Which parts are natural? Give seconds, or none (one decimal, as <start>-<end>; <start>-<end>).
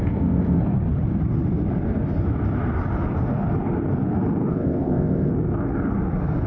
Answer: 0.6-4.5; 5.3-6.5